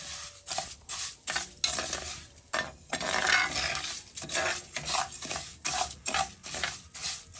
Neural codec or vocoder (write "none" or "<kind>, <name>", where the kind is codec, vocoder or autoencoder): none